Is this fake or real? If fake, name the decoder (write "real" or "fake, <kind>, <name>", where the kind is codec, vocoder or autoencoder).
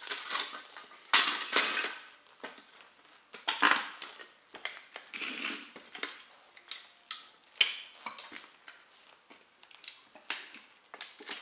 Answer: real